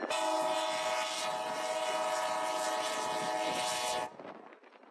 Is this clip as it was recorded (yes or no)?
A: yes